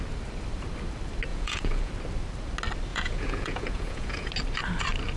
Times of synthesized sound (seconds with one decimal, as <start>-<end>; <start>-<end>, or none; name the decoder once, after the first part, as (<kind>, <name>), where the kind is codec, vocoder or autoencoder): 1.3-1.9 (vocoder, Vocos); 2.9-4.3